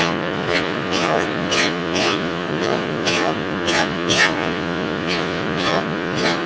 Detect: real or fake fake